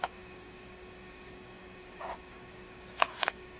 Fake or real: fake